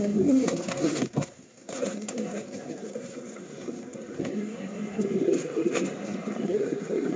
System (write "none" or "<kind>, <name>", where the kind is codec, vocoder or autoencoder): codec, SNAC